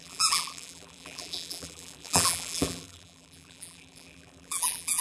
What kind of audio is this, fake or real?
fake